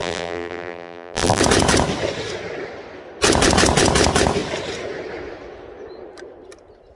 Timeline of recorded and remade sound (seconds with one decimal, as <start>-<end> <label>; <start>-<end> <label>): 0.0-1.4 remade; 1.4-7.0 recorded